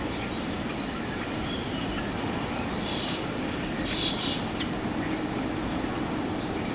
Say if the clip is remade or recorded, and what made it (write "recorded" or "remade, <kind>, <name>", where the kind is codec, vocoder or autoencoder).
recorded